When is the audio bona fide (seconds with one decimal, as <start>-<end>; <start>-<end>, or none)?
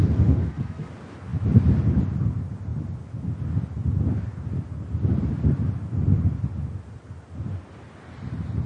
0.9-8.7